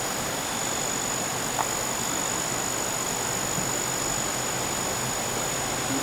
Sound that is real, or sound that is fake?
real